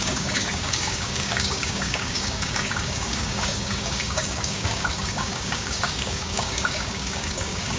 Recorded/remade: remade